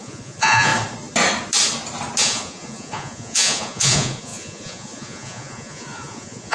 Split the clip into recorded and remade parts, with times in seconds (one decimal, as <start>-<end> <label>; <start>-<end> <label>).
0.0-0.7 remade; 0.7-2.2 recorded; 2.2-6.5 remade